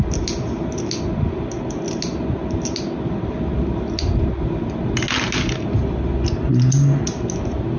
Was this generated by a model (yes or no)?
no